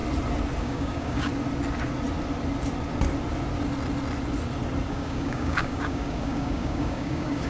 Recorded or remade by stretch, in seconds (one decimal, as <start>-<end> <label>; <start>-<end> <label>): 0.0-0.6 recorded; 0.6-1.3 remade; 1.3-4.9 recorded; 4.9-7.5 remade